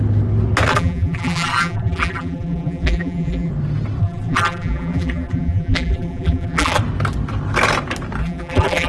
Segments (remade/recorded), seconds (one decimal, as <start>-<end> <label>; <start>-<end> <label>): 0.0-0.7 recorded; 0.7-3.5 remade; 3.5-4.0 recorded; 4.0-6.8 remade; 6.8-8.2 recorded; 8.2-8.9 remade